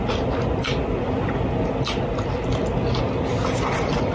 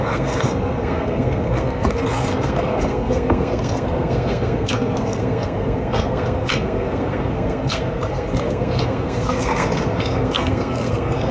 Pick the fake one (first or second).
second